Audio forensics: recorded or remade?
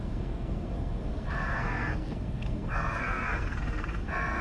remade